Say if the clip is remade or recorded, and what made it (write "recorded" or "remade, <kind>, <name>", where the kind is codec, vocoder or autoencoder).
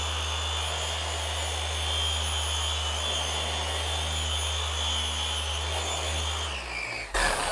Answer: recorded